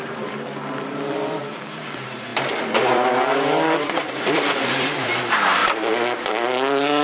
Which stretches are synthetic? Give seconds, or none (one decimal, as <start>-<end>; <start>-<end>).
0.0-2.3; 2.9-7.0